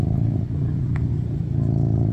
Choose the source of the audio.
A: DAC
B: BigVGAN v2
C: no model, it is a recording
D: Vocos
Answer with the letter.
C